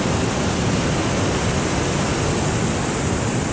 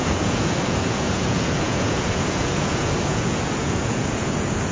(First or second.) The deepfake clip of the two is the second